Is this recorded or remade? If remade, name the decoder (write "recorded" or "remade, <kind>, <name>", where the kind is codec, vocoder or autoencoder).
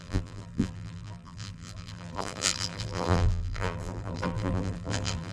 remade, vocoder, BigVGAN v2